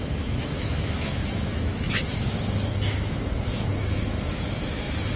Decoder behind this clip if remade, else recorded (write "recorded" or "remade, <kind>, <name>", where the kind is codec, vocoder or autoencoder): remade, autoencoder, DAC-VAE